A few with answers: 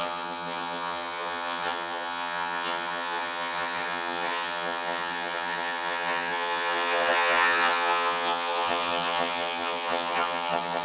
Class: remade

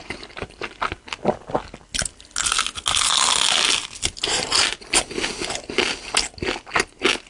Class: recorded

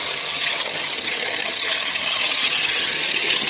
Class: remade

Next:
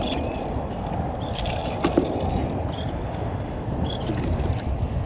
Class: recorded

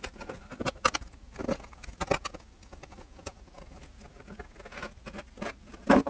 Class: recorded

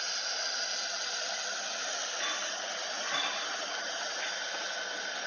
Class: recorded